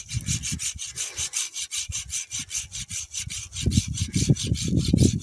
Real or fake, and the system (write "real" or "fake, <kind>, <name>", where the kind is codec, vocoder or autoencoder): real